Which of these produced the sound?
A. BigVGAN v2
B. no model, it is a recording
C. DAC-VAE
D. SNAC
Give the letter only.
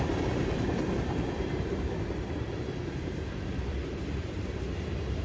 A